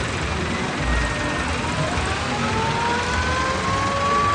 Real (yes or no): yes